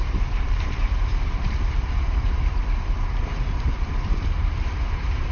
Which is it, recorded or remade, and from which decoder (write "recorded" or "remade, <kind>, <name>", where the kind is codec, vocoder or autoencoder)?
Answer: remade, vocoder, BigVGAN v2